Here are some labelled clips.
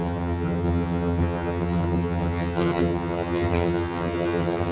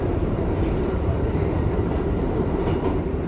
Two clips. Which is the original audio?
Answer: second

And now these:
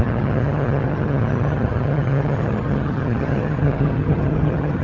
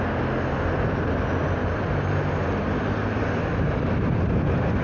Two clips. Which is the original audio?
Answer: second